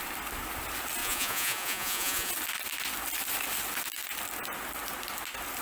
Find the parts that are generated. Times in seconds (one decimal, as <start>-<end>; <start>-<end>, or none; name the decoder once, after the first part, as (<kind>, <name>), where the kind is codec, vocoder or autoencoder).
1.0-2.3 (vocoder, Vocos)